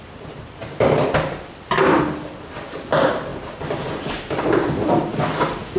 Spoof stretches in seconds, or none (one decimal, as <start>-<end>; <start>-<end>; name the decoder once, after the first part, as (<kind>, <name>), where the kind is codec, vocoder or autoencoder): 0.0-0.6 (vocoder, BigVGAN v2); 2.7-5.8